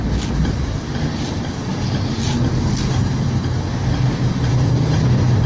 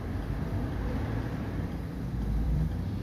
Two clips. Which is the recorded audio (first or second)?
first